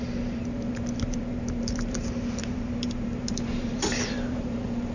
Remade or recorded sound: remade